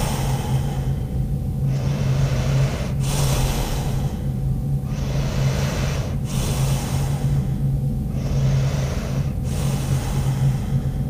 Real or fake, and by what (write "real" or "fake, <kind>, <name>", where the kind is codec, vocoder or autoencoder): real